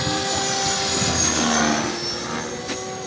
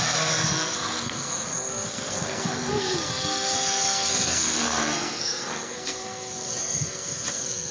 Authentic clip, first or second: first